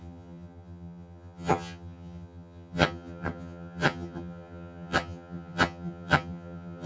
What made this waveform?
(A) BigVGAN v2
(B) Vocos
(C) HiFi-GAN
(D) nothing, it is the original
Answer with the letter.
C